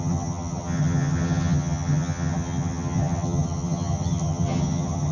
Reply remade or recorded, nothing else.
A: remade